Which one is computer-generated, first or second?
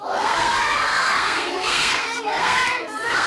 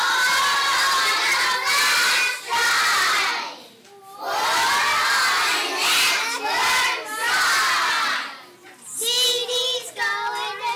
first